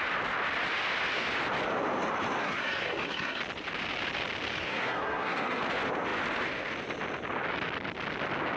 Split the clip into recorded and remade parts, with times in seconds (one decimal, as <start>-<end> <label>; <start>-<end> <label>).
0.0-2.4 recorded; 2.4-3.4 remade; 3.4-4.6 recorded; 4.6-5.6 remade; 5.6-8.6 recorded